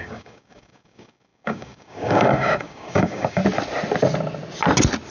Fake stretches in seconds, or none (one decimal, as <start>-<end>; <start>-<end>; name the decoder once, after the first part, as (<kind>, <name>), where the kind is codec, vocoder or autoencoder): 0.0-3.4 (codec, DAC)

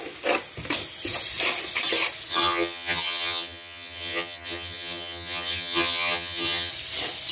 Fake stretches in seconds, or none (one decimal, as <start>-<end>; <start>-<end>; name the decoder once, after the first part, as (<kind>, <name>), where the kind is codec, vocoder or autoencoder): 2.3-6.7 (vocoder, HiFi-GAN)